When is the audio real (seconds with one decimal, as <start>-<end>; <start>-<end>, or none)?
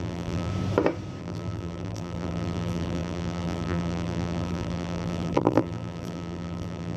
0.5-1.2